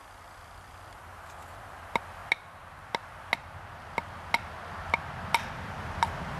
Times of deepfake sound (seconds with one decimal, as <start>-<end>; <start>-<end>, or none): none